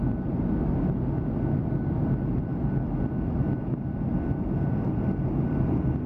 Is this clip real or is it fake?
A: real